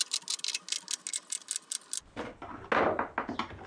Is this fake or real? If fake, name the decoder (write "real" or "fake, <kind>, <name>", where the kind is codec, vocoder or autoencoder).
real